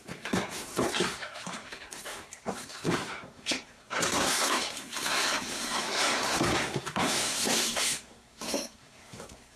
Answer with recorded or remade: remade